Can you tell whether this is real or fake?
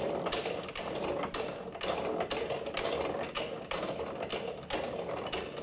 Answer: real